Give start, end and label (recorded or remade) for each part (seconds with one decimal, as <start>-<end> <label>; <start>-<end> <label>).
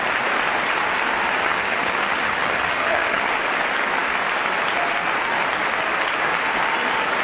0.0-1.4 recorded; 1.4-3.3 remade; 3.3-7.2 recorded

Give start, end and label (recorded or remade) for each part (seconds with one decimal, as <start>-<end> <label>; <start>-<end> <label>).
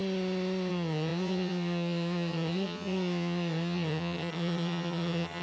0.0-0.7 recorded; 0.7-5.4 remade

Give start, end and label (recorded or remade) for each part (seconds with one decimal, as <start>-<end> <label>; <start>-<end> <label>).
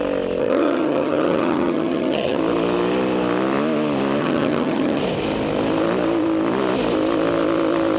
0.0-0.4 recorded; 0.4-2.4 remade; 2.4-4.2 recorded; 4.2-5.0 remade; 5.0-8.0 recorded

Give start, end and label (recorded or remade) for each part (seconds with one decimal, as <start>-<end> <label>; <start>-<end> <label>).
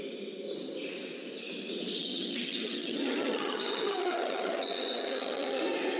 0.0-2.0 recorded; 2.0-5.6 remade; 5.6-6.0 recorded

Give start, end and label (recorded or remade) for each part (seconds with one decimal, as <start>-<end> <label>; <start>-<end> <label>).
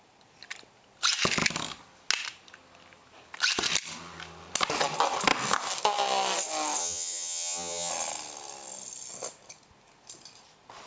0.0-6.8 recorded; 6.8-7.9 remade; 7.9-10.9 recorded